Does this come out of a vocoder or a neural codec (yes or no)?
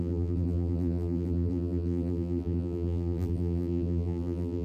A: yes